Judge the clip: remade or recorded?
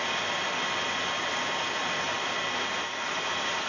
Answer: recorded